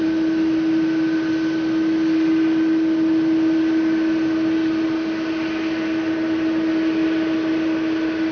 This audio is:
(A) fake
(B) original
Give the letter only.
B